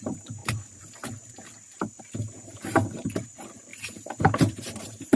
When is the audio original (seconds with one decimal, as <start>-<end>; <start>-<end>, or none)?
0.4-2.0